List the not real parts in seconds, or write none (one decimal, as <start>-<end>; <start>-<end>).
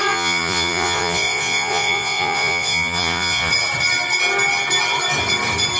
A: 0.0-3.5